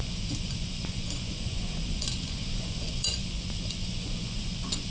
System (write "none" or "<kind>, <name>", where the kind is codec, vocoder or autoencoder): vocoder, Vocos